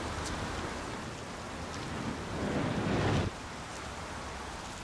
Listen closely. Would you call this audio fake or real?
real